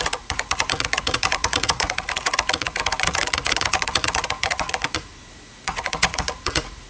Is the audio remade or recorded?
remade